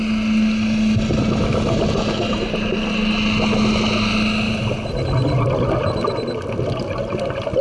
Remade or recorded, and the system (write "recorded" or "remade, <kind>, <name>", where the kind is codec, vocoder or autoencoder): recorded